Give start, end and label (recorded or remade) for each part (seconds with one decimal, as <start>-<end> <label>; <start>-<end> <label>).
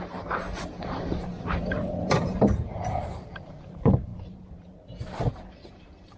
0.0-6.2 remade